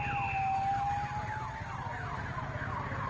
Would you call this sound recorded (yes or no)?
yes